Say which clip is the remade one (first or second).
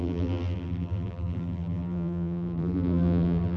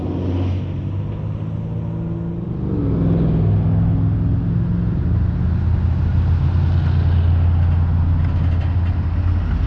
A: first